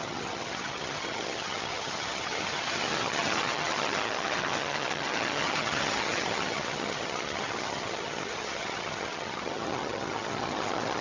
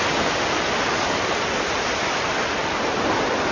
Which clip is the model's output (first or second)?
first